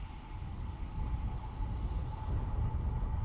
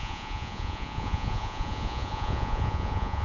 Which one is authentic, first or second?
first